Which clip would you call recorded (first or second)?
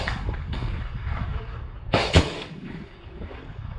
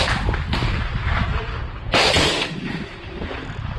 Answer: second